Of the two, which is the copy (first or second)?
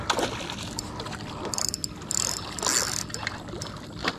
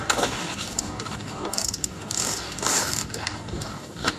second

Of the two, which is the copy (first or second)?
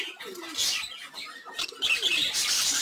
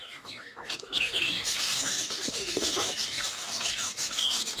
second